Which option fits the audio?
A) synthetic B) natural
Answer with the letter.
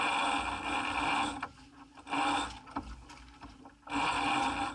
B